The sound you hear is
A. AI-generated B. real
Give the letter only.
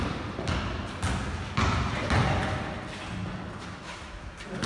B